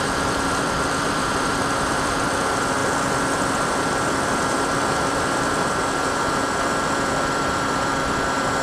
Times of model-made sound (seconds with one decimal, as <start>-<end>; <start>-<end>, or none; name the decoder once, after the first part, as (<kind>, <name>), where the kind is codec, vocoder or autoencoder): 0.0-2.8 (vocoder, BigVGAN v2); 3.7-8.6